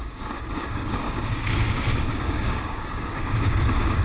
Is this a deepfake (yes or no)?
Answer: yes